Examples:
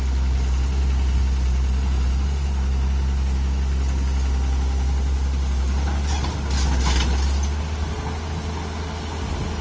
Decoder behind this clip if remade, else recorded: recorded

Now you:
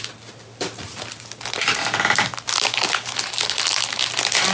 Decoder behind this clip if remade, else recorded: recorded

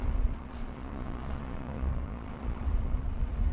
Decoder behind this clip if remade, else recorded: remade, vocoder, Vocos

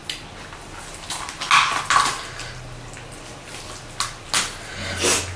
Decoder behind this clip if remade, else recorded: recorded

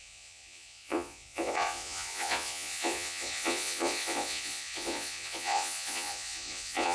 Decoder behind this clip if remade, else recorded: remade, vocoder, Vocos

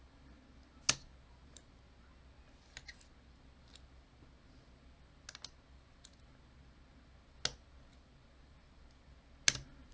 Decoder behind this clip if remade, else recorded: recorded